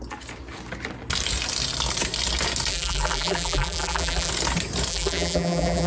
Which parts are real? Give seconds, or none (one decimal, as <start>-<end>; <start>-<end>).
0.0-2.7; 4.3-4.9